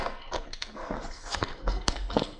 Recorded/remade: remade